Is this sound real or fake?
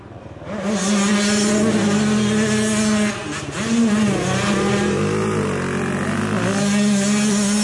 real